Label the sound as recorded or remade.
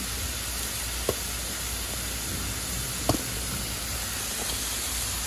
recorded